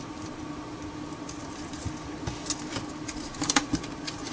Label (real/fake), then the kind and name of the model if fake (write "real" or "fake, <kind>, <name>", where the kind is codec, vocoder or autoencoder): real